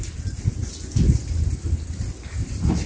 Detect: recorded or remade recorded